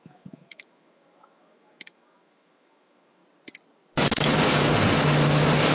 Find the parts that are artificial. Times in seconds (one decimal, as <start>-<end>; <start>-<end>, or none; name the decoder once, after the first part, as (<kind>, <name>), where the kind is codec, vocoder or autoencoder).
0.0-3.2 (autoencoder, DAC-VAE)